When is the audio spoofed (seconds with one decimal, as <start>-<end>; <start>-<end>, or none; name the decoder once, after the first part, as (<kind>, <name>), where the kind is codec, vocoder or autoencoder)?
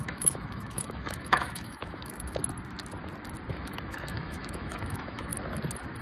0.0-2.4 (autoencoder, DAC-VAE); 3.5-5.3